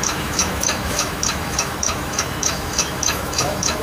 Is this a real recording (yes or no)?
no